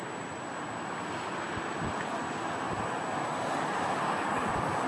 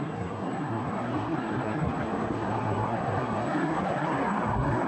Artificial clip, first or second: second